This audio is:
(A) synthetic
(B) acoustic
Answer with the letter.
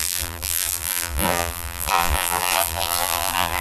A